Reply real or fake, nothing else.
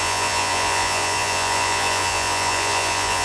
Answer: fake